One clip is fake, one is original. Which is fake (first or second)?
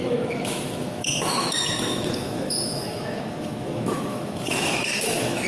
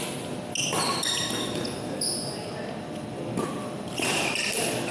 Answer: first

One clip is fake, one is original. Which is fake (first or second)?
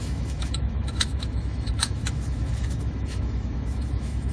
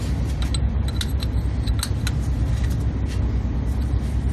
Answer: first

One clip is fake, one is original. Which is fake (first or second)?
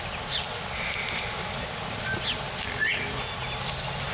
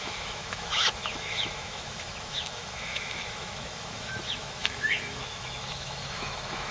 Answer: second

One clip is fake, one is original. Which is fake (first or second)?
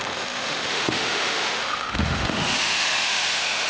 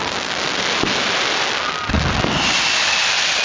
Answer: first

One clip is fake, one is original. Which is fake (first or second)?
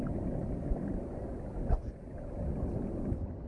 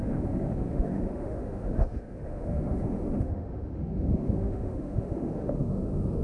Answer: second